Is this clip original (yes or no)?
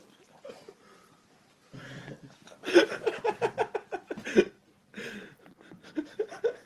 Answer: no